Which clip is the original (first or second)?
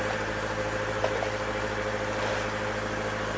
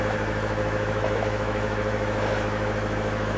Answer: first